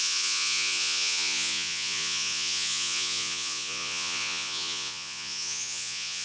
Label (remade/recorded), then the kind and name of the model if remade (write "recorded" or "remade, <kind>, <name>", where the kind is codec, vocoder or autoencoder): remade, vocoder, Vocos